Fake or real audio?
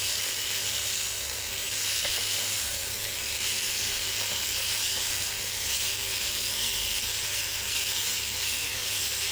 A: fake